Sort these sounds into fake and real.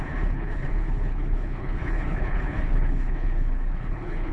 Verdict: fake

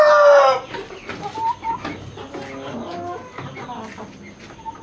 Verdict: real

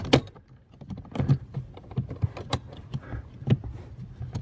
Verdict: real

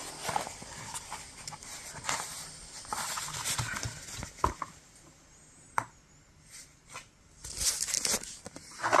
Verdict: real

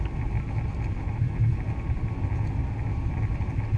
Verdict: real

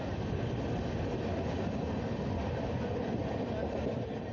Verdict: real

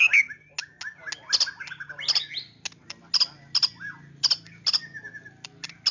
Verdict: real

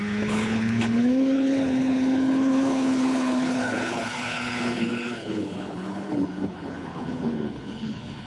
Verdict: fake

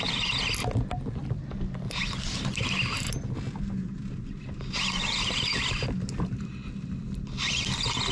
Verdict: real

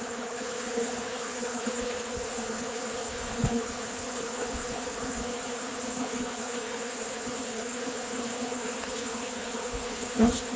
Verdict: fake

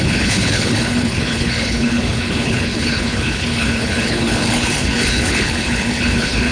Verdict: fake